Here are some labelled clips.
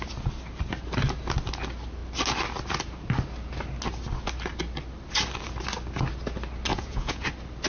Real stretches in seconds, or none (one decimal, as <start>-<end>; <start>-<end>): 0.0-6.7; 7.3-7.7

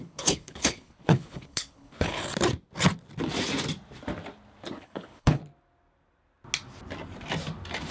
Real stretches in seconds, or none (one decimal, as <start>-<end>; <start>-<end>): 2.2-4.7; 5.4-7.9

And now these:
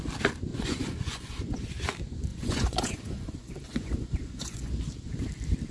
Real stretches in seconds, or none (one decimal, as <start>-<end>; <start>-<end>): 0.0-0.5; 1.7-2.3; 4.7-5.7

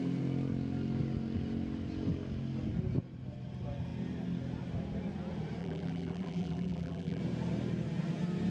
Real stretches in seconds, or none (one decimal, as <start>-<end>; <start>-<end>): 0.0-5.6; 7.2-8.5

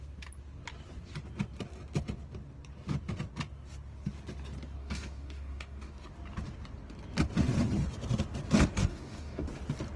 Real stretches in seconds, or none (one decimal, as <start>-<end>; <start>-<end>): 0.0-4.8; 5.9-8.8; 9.4-10.0